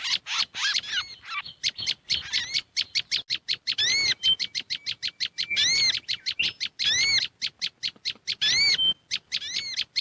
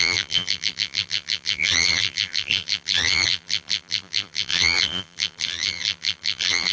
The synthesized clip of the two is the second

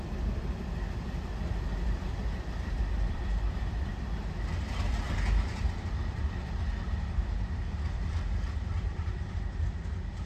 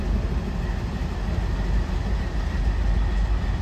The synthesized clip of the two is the first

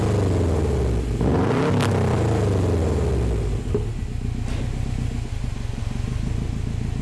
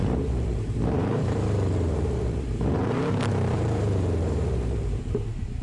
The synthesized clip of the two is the second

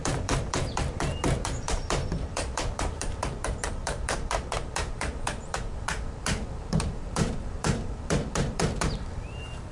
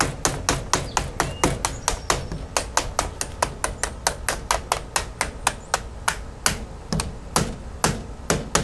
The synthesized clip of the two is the first